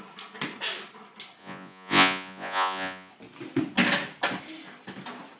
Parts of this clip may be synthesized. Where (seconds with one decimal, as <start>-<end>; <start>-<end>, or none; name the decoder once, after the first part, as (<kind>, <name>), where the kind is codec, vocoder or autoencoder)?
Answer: 1.4-3.1 (vocoder, Vocos)